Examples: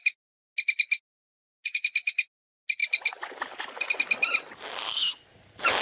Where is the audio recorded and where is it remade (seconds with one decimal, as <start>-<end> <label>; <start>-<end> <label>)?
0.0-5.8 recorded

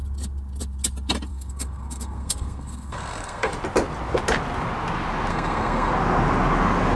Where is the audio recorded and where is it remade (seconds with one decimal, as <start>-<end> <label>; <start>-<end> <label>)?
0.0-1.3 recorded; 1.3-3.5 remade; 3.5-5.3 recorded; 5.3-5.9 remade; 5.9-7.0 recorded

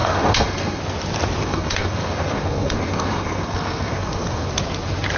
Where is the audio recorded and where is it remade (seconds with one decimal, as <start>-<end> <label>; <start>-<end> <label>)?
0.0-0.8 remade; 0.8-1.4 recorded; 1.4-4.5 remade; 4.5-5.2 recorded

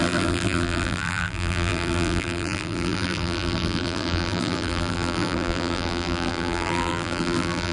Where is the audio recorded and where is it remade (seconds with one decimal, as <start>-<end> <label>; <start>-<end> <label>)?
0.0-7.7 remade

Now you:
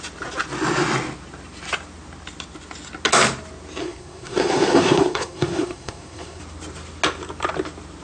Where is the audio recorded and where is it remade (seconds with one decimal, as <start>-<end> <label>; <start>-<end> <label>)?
0.0-3.8 recorded; 3.8-6.4 remade; 6.4-8.0 recorded